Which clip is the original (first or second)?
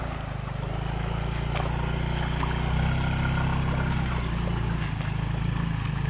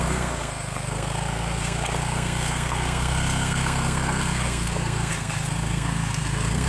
first